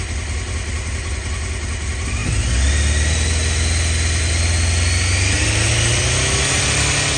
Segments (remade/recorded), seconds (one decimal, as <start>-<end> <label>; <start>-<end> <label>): 0.0-7.2 recorded